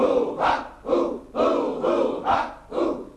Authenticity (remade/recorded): recorded